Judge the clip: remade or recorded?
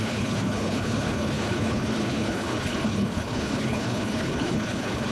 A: remade